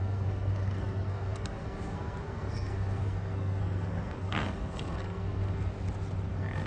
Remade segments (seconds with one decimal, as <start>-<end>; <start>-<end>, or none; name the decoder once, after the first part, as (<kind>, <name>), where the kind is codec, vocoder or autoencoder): 0.0-5.7 (codec, SNAC); 6.3-6.7